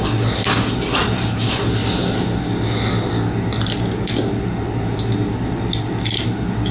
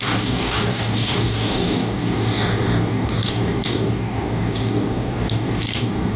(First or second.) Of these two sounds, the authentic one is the first